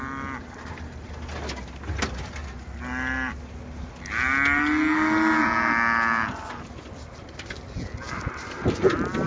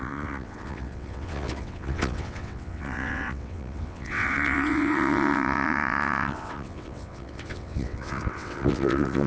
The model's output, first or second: second